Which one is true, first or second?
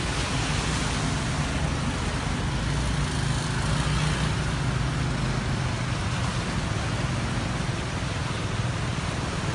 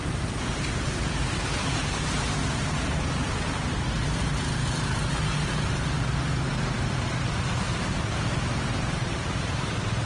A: first